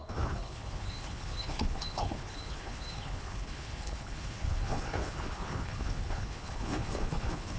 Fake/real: fake